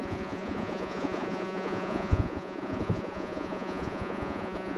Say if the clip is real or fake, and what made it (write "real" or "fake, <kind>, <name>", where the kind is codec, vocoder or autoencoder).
fake, vocoder, Vocos